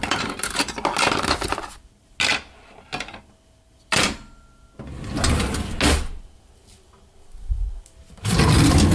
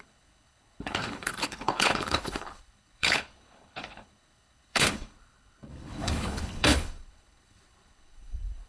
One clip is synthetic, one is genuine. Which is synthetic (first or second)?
second